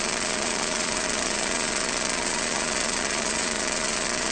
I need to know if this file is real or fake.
fake